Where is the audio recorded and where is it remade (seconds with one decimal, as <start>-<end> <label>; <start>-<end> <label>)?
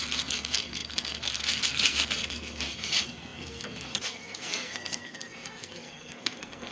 0.0-6.7 remade